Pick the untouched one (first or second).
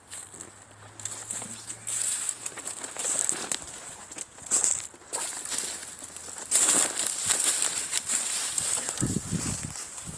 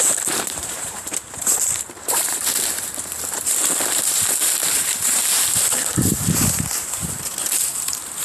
first